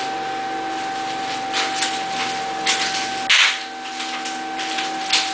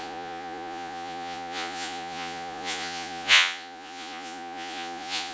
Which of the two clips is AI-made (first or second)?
second